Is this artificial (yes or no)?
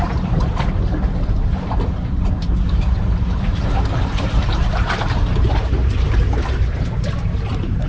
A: yes